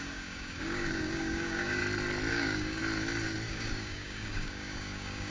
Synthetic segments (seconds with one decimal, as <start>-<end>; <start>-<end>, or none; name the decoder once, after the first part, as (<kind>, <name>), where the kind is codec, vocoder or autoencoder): 0.0-1.8 (codec, DAC); 2.3-2.8; 3.5-5.3